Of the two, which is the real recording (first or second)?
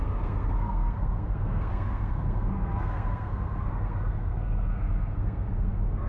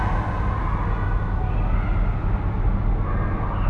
second